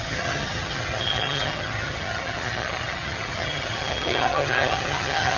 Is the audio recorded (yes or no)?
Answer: no